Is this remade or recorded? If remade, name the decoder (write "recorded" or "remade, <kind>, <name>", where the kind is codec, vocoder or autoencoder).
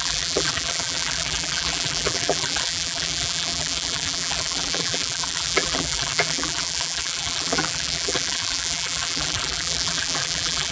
remade, vocoder, BigVGAN v2